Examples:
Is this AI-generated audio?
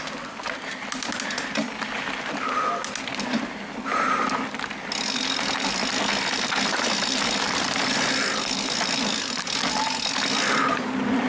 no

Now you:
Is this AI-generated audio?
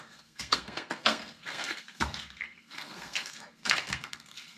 yes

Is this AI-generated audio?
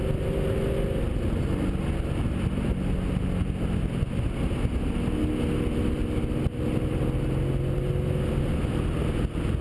no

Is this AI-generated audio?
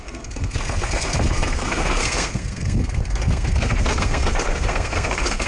yes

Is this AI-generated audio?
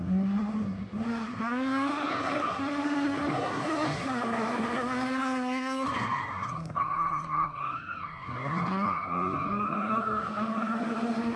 yes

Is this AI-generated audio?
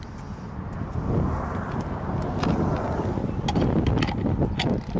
no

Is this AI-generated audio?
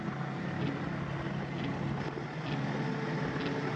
no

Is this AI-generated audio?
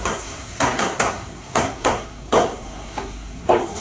yes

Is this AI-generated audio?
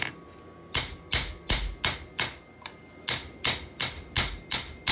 no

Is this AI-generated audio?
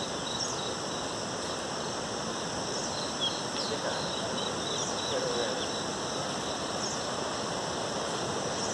no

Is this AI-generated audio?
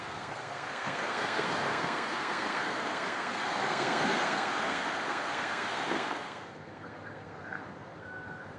yes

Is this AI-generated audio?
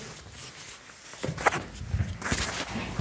no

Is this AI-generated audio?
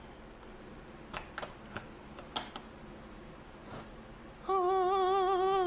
no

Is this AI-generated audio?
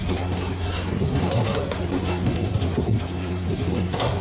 yes